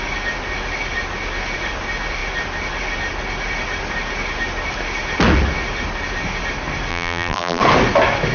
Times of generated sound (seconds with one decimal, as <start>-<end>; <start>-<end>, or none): 6.9-7.6